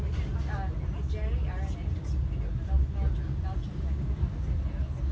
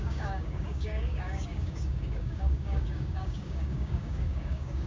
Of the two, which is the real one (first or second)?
first